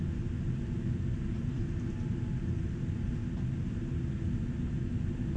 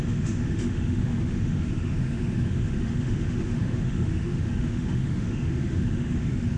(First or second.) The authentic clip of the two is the first